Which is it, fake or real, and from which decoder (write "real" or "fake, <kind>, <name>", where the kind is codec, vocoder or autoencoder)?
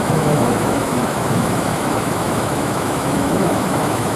fake, autoencoder, DAC-VAE